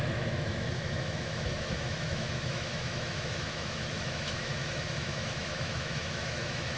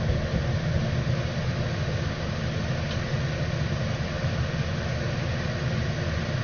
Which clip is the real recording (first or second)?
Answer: second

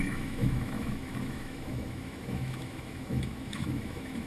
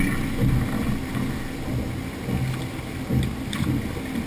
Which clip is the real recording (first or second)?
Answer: second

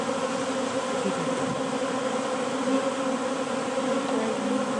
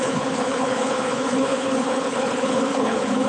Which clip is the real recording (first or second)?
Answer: first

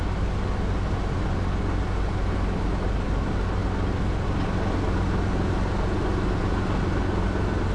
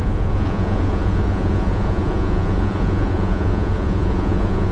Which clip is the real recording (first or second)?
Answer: first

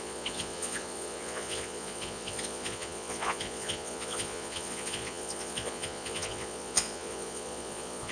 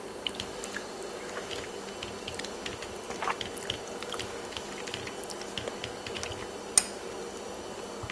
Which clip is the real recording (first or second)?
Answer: second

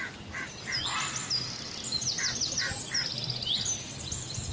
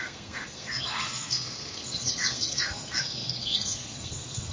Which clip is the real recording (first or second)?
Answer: first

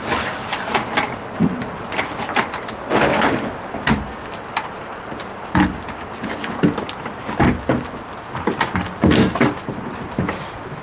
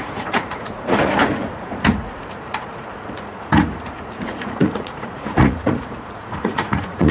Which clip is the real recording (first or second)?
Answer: first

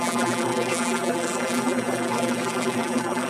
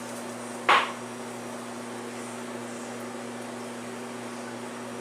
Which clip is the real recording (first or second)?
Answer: second